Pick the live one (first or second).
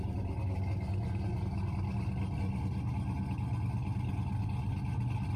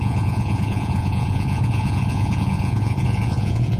first